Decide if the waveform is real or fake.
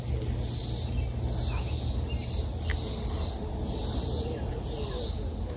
real